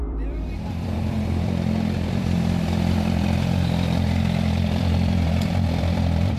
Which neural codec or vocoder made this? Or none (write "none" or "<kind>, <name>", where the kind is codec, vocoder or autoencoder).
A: vocoder, BigVGAN v2